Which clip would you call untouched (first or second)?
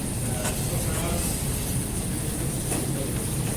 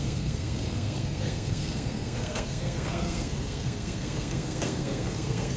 first